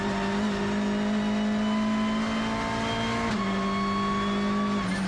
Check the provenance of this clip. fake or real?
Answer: real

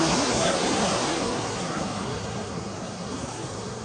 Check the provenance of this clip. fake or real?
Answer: fake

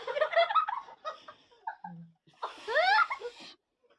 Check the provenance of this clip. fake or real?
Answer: real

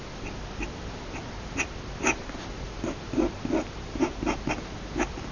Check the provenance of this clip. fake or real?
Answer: real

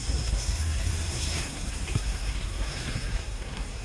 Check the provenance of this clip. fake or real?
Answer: fake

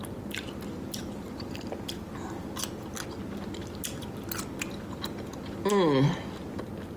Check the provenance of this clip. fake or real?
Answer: real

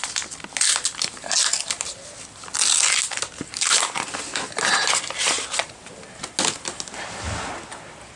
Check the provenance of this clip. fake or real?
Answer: real